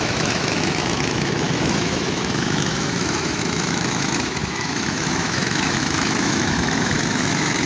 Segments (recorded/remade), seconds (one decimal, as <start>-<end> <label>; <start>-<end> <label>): 0.0-7.7 remade